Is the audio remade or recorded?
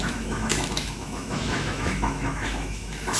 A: remade